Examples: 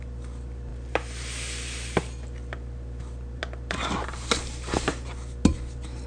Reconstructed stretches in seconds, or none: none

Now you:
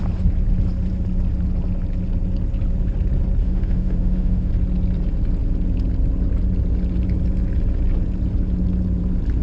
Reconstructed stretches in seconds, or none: 3.4-4.5 (autoencoder, DAC-VAE)

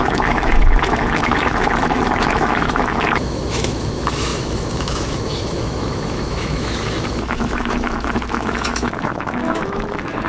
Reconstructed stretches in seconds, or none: 0.0-10.3 (autoencoder, DAC-VAE)

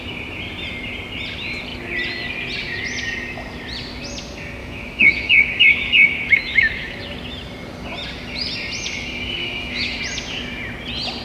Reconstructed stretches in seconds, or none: 4.6-7.0 (autoencoder, DAC-VAE); 9.4-10.0

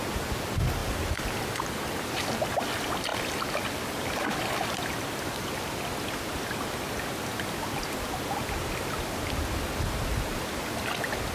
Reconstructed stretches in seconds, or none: none

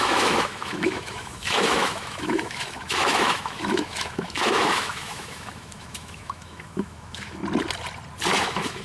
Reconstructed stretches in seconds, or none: 0.0-7.4 (autoencoder, DAC-VAE); 8.4-8.8